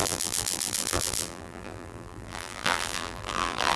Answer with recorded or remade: remade